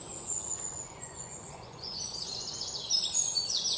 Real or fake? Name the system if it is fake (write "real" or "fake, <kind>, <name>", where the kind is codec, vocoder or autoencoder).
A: fake, vocoder, Vocos